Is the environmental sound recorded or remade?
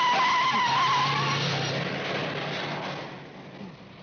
recorded